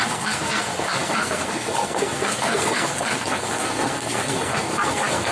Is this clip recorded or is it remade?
remade